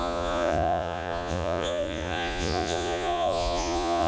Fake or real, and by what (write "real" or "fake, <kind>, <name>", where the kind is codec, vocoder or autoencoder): fake, vocoder, Vocos